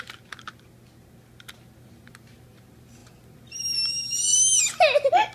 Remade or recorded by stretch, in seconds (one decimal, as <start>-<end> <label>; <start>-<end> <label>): 0.0-5.3 recorded